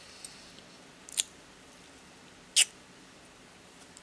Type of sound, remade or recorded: recorded